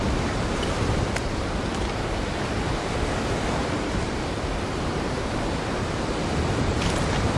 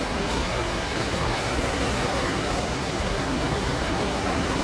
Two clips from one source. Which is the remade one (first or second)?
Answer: second